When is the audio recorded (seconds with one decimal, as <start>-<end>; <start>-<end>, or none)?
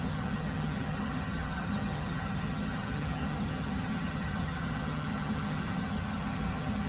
none